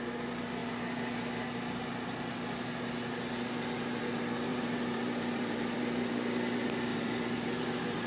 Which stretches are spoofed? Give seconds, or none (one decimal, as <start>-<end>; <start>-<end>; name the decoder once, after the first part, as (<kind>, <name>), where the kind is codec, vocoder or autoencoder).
4.5-6.1 (vocoder, BigVGAN v2); 6.9-8.1